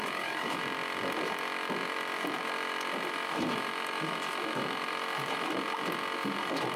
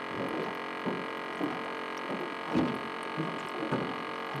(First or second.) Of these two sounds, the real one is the second